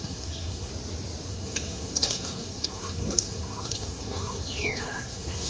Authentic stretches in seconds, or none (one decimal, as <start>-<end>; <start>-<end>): 0.7-1.3